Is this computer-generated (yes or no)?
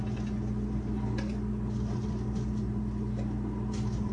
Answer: no